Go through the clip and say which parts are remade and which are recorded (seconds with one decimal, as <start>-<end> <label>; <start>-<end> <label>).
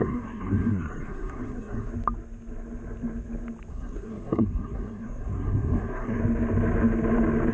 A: 0.0-1.9 remade; 1.9-3.7 recorded; 3.7-6.2 remade; 6.2-7.5 recorded